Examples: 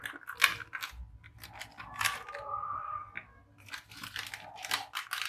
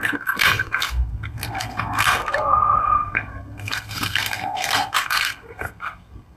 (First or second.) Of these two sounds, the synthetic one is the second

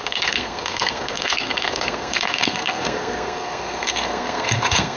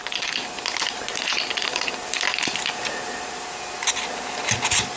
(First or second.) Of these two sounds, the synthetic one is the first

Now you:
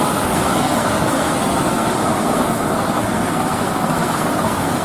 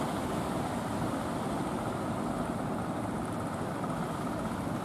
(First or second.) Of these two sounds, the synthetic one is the first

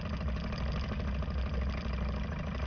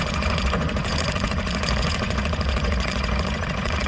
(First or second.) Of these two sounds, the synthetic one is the second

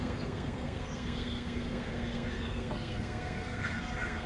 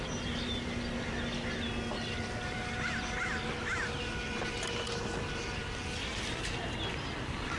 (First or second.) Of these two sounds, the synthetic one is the first